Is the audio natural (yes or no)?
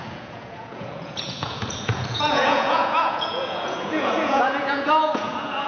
no